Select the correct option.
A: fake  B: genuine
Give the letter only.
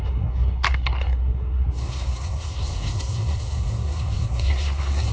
A